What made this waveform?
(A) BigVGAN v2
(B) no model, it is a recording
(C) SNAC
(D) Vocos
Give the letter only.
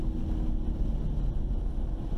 B